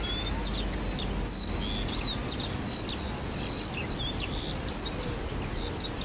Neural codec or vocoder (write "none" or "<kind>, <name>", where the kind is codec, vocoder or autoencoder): none